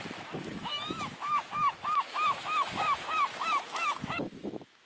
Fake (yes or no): yes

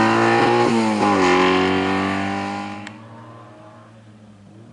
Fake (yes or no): no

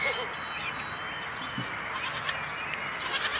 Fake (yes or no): no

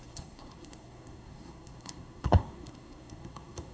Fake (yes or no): yes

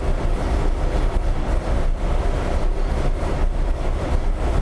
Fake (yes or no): no